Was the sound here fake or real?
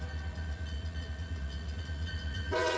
fake